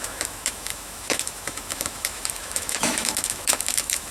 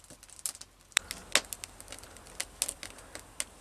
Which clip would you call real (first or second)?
second